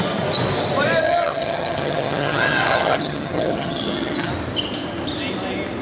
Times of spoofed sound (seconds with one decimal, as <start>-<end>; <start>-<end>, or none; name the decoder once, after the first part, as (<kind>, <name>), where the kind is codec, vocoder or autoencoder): 1.0-4.3 (vocoder, HiFi-GAN)